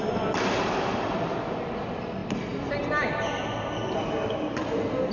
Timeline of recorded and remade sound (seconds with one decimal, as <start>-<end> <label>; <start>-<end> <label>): 0.0-5.1 recorded